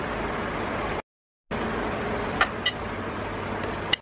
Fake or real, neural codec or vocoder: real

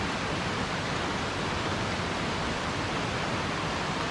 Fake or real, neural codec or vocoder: real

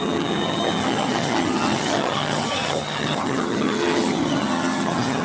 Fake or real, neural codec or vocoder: fake, vocoder, HiFi-GAN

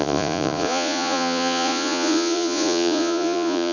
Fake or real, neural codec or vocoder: fake, vocoder, Vocos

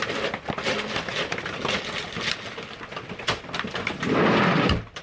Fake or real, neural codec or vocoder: real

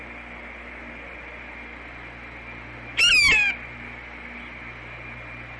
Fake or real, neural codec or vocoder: real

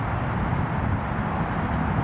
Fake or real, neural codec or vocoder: real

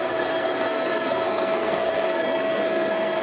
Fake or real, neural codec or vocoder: fake, codec, SNAC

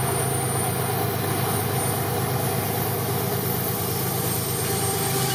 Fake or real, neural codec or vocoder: real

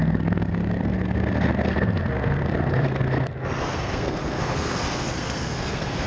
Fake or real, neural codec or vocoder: fake, codec, SNAC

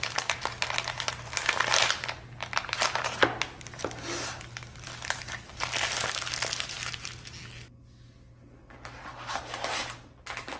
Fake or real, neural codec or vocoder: real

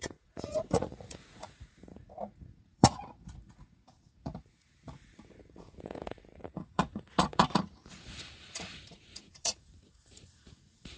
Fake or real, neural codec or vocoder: fake, vocoder, Vocos